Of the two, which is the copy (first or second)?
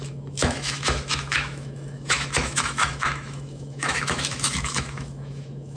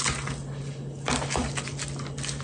first